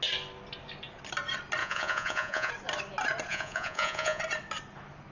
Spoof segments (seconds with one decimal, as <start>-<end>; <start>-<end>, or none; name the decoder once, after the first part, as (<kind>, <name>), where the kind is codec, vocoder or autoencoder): 1.6-2.5 (vocoder, Vocos); 3.3-4.2